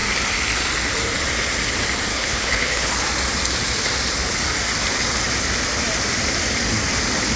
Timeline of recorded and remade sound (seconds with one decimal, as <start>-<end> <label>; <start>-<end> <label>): 0.0-2.1 recorded; 2.1-2.9 remade; 2.9-7.4 recorded